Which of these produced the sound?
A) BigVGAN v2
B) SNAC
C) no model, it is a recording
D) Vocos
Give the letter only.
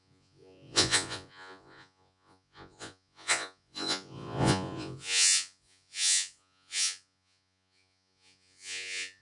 D